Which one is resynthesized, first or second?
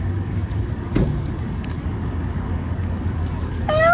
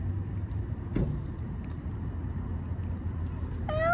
first